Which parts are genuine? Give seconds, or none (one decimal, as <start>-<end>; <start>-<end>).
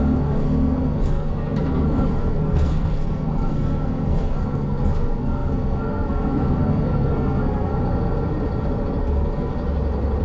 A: 7.7-9.0; 9.5-10.2